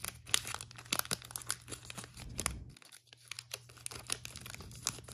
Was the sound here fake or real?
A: real